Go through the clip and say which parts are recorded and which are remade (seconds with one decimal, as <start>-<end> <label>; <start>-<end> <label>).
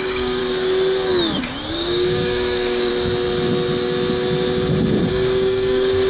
0.0-0.4 remade; 0.4-1.7 recorded; 1.7-2.9 remade; 2.9-5.1 recorded; 5.1-6.1 remade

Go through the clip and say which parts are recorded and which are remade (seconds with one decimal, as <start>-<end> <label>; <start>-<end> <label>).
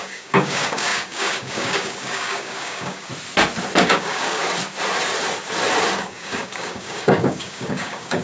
0.0-3.1 remade; 3.1-3.8 recorded; 3.8-4.4 remade; 4.4-6.0 recorded; 6.0-8.2 remade